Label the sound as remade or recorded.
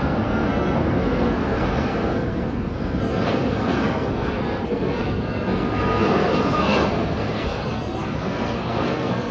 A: remade